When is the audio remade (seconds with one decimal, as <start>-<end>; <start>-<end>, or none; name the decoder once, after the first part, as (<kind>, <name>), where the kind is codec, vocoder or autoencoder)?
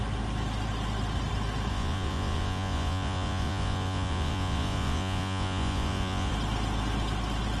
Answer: 1.7-6.3 (vocoder, Vocos)